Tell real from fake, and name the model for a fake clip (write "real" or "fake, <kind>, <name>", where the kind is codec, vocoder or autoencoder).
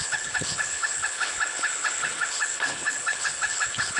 fake, codec, HILCodec